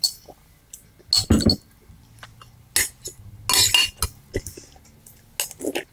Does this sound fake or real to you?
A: real